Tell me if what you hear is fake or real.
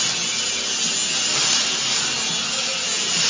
real